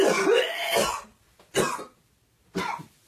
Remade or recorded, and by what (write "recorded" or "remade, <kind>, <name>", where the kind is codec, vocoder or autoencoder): recorded